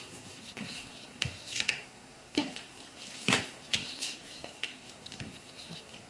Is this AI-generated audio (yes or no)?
yes